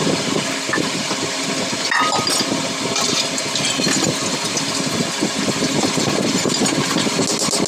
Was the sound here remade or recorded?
recorded